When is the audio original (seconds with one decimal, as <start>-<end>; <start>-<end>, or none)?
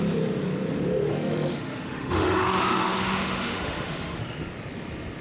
0.0-1.1; 4.2-5.2